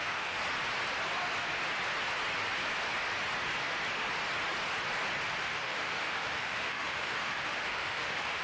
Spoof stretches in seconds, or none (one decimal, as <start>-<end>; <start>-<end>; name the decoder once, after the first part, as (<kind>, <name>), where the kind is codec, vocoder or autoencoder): 0.0-0.4 (autoencoder, DAC-VAE); 5.4-8.4